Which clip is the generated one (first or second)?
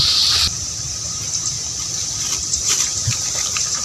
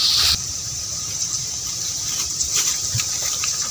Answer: second